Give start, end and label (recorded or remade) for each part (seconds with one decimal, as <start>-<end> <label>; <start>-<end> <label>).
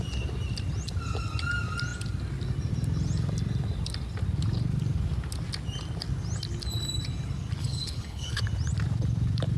0.0-7.6 recorded; 7.6-8.4 remade; 8.4-9.6 recorded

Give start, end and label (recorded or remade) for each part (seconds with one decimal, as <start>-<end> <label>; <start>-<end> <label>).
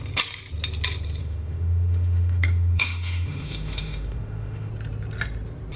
0.0-1.2 recorded; 1.2-4.7 remade; 4.7-5.8 recorded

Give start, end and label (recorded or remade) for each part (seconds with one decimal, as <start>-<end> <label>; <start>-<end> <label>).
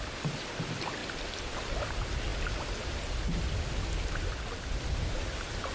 0.0-5.7 recorded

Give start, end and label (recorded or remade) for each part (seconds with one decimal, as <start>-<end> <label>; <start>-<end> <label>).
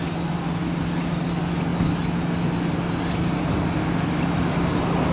0.0-5.1 recorded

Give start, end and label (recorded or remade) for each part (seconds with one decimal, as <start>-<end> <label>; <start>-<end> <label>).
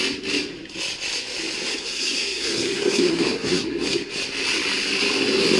0.0-1.7 recorded; 1.7-4.1 remade; 4.1-5.6 recorded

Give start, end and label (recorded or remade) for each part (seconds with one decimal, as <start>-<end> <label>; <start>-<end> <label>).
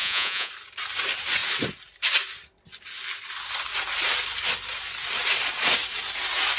0.0-0.5 remade; 0.5-6.6 recorded